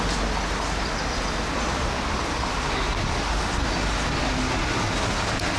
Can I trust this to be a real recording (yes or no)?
yes